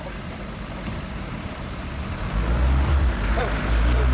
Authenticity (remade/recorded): recorded